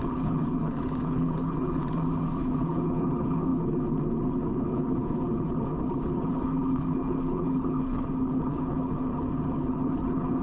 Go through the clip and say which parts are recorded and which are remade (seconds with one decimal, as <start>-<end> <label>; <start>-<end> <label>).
0.0-10.4 remade